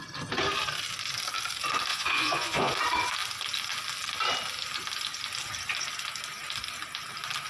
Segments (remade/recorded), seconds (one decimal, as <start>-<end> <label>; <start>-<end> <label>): 0.0-1.9 recorded; 1.9-2.7 remade; 2.7-7.5 recorded